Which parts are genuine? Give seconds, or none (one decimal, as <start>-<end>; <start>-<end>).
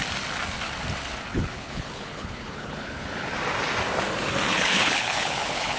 0.0-1.3; 3.3-4.5